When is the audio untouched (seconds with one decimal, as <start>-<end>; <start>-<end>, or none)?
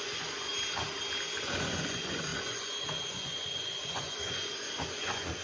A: 0.5-1.4